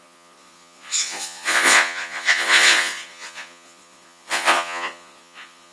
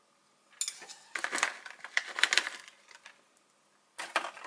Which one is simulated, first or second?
first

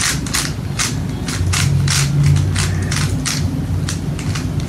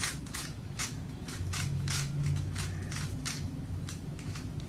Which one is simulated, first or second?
second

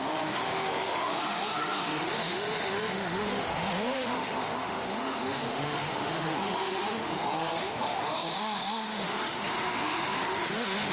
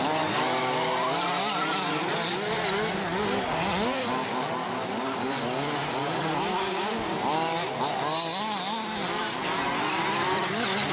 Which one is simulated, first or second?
first